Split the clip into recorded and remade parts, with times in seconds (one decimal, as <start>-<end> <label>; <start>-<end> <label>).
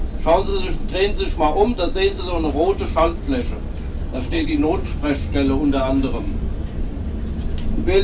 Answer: 0.0-4.0 recorded; 4.0-4.5 remade; 4.5-8.0 recorded